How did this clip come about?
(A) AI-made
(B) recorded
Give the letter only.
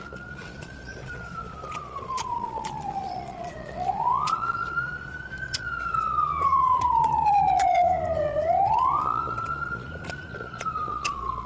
A